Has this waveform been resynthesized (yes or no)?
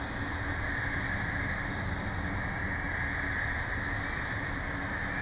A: no